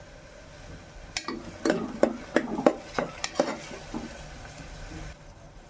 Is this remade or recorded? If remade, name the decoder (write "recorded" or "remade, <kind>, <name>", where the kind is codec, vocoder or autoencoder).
recorded